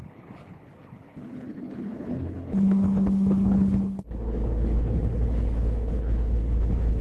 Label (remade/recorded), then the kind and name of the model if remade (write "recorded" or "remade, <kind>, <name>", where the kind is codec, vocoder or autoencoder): remade, codec, HILCodec